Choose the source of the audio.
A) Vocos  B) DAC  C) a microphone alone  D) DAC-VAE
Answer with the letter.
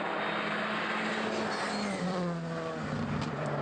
C